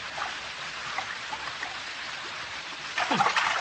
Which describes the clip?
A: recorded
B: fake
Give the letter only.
A